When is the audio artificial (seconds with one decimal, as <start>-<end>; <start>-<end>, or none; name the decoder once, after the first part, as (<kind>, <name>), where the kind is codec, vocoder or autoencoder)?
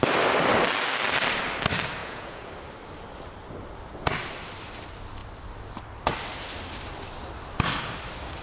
2.0-2.5 (vocoder, Vocos)